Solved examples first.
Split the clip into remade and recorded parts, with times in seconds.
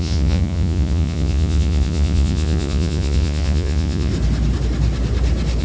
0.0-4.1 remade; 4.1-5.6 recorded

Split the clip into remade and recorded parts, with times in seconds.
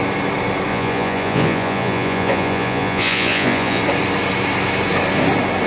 0.0-0.7 recorded; 0.7-3.8 remade; 3.8-5.7 recorded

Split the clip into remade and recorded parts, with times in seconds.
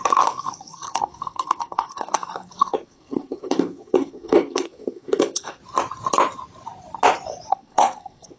0.0-5.6 remade; 5.6-7.5 recorded; 7.5-8.4 remade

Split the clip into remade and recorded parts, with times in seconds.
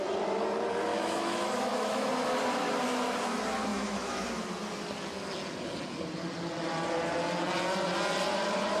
0.0-0.9 recorded; 0.9-2.1 remade; 2.1-3.7 recorded; 3.7-4.5 remade; 4.5-8.8 recorded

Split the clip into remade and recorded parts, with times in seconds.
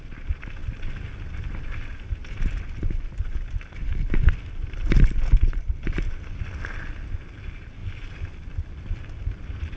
0.0-9.8 recorded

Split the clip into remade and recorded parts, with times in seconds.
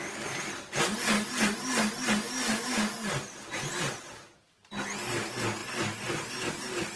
0.0-7.0 recorded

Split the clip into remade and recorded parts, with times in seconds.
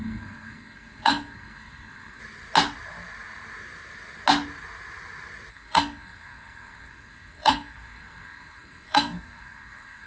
0.0-2.2 remade; 2.2-5.5 recorded; 5.5-10.1 remade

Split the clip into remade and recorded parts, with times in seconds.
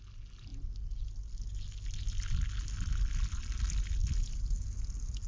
0.0-5.3 recorded